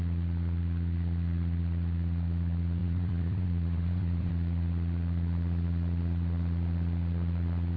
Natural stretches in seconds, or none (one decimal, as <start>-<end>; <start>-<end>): 0.0-2.8; 4.3-7.8